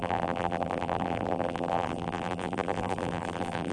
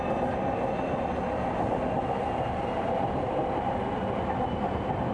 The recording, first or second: second